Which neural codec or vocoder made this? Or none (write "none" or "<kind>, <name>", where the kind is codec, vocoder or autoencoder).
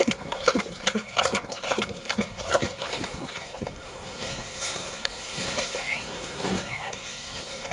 codec, SNAC